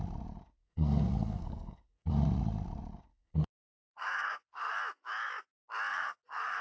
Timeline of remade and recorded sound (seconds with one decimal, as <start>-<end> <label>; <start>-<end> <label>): 0.0-0.6 recorded; 0.6-2.1 remade; 2.1-3.1 recorded; 3.1-4.8 remade; 4.8-5.9 recorded; 5.9-6.6 remade